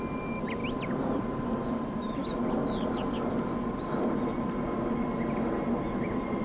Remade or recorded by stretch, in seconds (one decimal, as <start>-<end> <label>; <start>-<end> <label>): 0.0-6.4 recorded

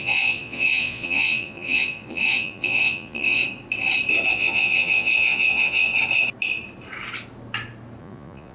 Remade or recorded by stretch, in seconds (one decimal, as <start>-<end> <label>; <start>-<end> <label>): 0.0-3.4 remade; 3.4-4.3 recorded; 4.3-5.9 remade; 5.9-8.0 recorded; 8.0-8.5 remade

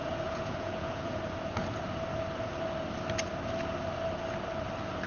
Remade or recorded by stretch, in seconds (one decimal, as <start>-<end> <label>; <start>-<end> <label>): 0.0-1.2 remade; 1.2-5.1 recorded